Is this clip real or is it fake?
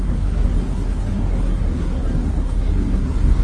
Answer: fake